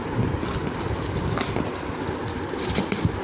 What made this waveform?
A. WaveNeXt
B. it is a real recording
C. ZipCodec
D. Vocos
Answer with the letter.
B